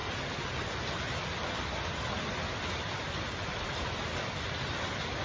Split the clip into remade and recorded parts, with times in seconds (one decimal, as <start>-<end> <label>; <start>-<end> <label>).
0.0-3.1 recorded; 3.1-5.2 remade